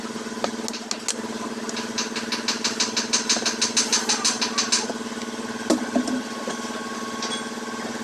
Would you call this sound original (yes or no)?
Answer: yes